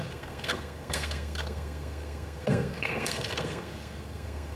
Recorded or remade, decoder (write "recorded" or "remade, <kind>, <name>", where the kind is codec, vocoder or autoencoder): remade, codec, SNAC